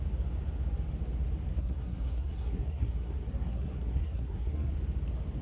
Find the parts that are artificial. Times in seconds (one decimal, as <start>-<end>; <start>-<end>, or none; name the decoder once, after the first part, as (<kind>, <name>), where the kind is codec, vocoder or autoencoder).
1.5-4.7 (codec, SNAC)